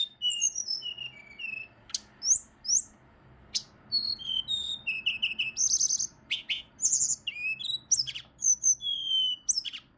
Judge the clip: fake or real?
real